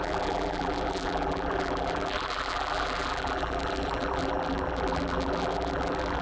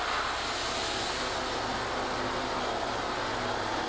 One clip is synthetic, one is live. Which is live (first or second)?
second